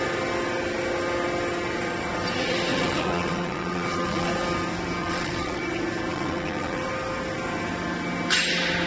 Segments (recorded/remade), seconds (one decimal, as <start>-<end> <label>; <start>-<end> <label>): 0.0-2.7 recorded; 2.7-4.3 remade; 4.3-5.0 recorded; 5.0-5.6 remade; 5.6-6.1 recorded; 6.1-6.9 remade; 6.9-8.9 recorded